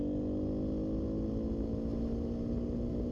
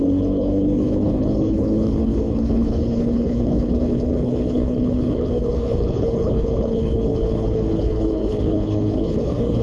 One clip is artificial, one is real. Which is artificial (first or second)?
second